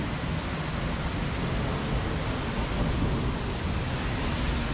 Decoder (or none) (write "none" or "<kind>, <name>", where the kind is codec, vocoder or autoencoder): none